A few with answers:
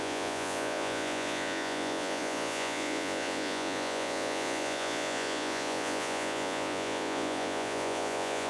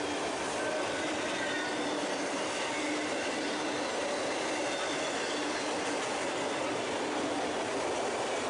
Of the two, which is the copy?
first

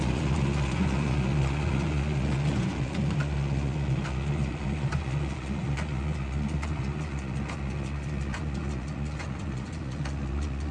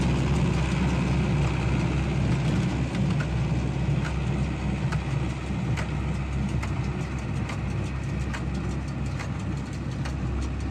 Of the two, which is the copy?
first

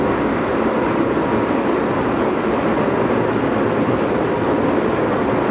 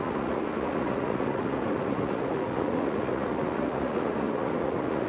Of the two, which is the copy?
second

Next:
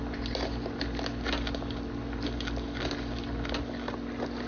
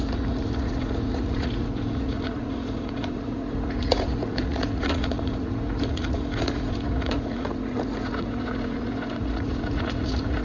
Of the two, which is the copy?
second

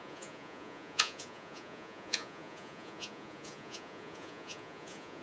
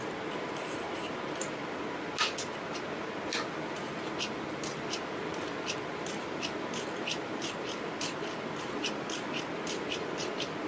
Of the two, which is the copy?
first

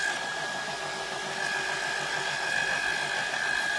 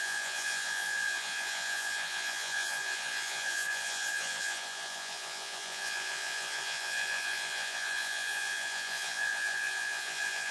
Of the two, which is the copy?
second